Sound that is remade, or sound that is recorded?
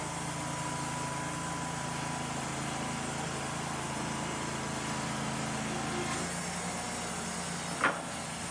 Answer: recorded